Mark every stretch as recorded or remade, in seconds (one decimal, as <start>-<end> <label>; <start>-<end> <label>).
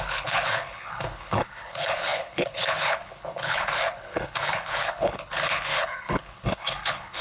0.0-7.2 remade